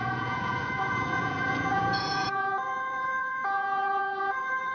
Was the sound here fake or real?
fake